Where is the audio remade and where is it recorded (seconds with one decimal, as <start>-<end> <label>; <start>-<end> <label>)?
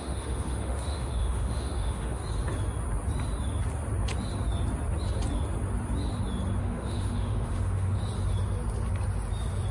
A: 0.0-2.2 remade; 2.2-6.6 recorded; 6.6-8.0 remade; 8.0-9.7 recorded